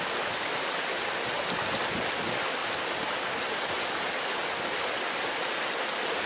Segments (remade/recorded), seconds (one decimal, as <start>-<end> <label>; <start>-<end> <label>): 0.0-6.3 recorded